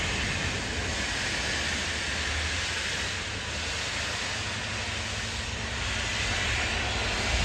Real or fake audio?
real